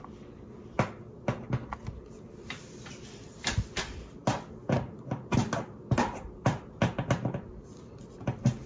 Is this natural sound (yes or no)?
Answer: yes